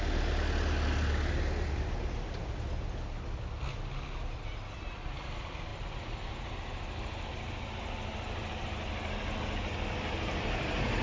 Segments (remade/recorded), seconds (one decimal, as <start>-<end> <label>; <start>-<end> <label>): 0.0-11.0 recorded